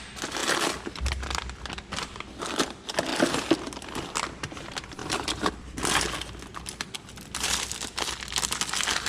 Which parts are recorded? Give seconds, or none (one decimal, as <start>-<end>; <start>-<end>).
0.0-0.4; 1.6-3.1; 3.7-5.0; 5.8-6.5; 7.0-9.1